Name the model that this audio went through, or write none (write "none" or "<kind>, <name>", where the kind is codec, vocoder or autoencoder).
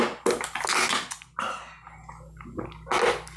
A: none